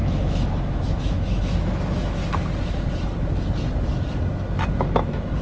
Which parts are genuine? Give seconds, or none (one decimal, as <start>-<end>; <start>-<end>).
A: 2.2-4.8